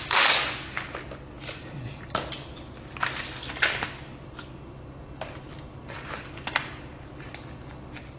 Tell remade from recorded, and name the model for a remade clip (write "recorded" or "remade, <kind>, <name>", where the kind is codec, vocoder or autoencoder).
recorded